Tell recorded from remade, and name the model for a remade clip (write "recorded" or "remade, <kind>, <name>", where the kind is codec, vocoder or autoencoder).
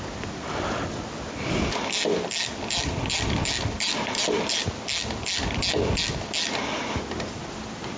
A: recorded